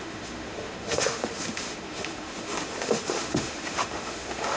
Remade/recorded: remade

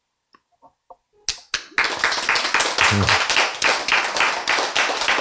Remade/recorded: recorded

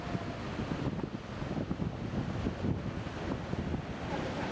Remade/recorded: recorded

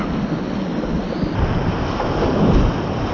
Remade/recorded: recorded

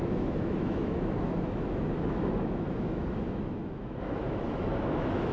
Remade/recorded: remade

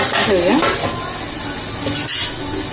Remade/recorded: recorded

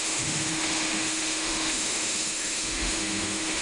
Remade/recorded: remade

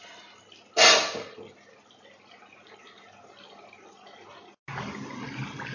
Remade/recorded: recorded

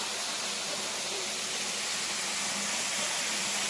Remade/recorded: recorded